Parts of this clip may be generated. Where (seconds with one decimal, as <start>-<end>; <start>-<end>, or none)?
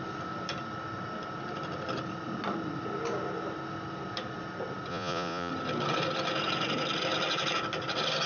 4.9-5.5